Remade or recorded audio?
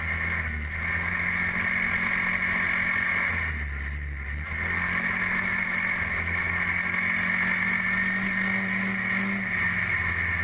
recorded